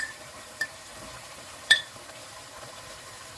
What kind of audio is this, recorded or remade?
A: remade